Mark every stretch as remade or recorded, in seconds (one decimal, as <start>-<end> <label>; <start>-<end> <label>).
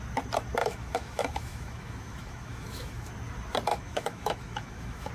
0.0-0.6 recorded; 0.6-3.1 remade; 3.1-3.7 recorded; 3.7-5.1 remade